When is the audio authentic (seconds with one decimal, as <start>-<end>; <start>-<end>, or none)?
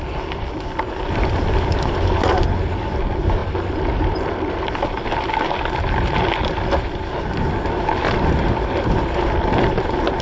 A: 0.0-10.2